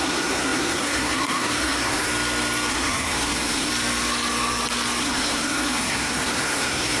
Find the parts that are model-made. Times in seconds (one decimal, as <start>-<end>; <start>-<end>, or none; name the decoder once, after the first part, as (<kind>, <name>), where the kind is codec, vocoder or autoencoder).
0.0-2.1 (codec, SNAC); 2.7-3.7; 5.0-7.0